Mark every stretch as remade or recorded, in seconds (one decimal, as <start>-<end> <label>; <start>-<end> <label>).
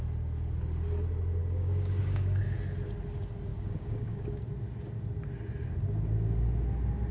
0.0-1.4 recorded; 1.4-2.4 remade; 2.4-3.5 recorded; 3.5-4.4 remade; 4.4-7.1 recorded